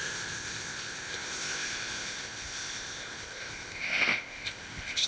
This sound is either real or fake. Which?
fake